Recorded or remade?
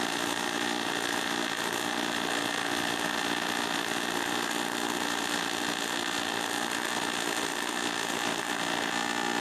recorded